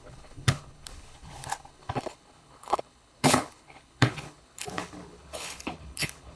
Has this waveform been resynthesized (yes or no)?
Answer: yes